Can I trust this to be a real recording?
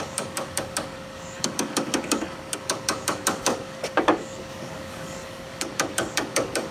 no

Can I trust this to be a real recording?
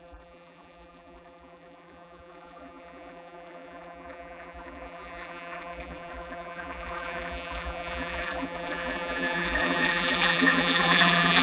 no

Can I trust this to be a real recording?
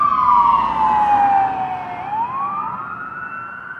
yes